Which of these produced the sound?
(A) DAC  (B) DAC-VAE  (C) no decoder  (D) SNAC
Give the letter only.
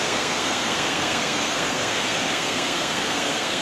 D